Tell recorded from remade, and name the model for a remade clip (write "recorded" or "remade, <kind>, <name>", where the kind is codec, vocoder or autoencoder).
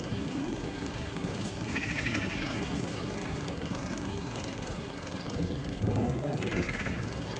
remade, codec, SNAC